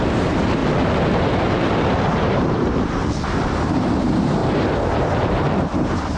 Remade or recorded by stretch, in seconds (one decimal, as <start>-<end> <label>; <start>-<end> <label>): 0.0-0.6 remade; 0.6-1.3 recorded; 1.3-3.0 remade; 3.0-3.6 recorded; 3.6-6.2 remade